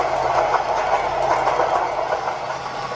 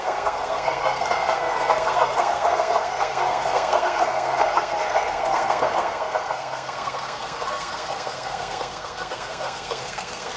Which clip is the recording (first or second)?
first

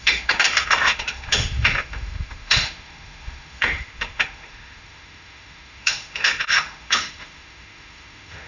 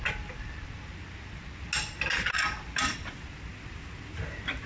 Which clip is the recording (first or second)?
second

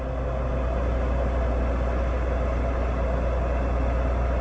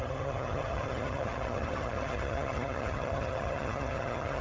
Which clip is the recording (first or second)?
first